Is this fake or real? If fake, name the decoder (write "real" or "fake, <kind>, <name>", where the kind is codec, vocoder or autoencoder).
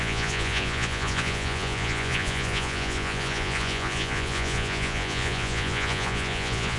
fake, vocoder, Vocos